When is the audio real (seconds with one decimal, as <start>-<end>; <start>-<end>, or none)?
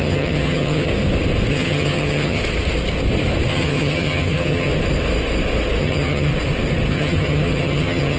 0.9-1.5; 2.4-3.5; 4.7-5.8; 6.3-6.9